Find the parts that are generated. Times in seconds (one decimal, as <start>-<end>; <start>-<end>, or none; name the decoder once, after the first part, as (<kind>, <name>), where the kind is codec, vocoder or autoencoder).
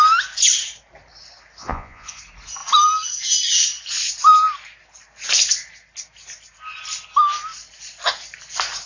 1.6-2.2 (vocoder, Vocos)